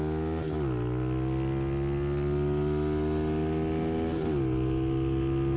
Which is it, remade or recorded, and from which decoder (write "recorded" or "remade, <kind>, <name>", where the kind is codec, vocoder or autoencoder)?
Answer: recorded